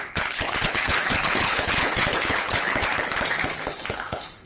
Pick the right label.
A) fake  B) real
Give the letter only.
A